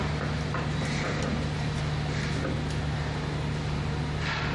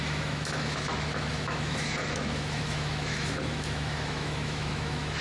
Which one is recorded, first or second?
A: first